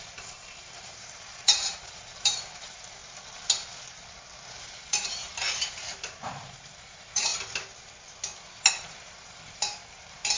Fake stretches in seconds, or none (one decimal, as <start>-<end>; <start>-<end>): 0.0-3.0; 4.6-7.3; 8.7-10.4